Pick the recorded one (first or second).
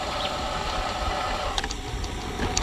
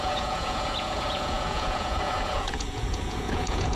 first